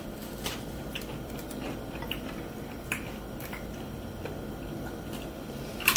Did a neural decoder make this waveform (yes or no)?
yes